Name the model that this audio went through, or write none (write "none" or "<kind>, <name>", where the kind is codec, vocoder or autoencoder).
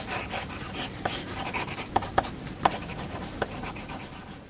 none